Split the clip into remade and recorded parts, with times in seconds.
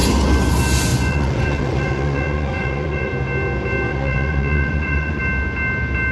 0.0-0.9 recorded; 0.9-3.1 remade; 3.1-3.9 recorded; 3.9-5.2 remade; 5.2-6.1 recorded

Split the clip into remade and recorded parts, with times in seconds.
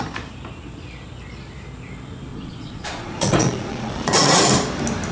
0.0-2.3 recorded; 2.3-4.4 remade; 4.4-5.1 recorded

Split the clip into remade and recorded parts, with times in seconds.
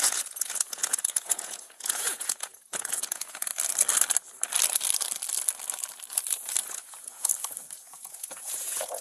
0.0-3.5 remade; 3.5-6.7 recorded; 6.7-7.3 remade; 7.3-7.8 recorded; 7.8-9.0 remade